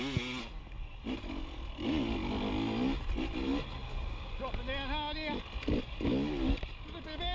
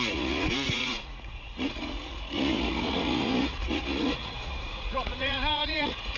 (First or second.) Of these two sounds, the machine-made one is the second